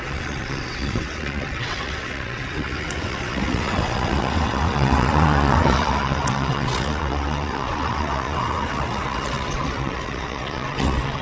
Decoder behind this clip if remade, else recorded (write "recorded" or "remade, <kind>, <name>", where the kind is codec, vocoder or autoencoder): remade, vocoder, WaveNeXt